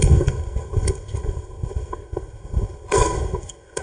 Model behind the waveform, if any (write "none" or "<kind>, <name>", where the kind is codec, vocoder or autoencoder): codec, SNAC